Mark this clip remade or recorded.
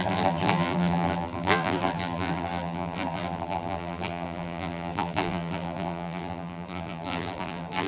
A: remade